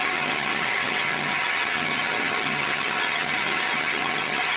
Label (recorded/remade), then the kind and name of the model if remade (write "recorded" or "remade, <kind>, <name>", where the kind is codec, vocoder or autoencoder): remade, vocoder, HiFi-GAN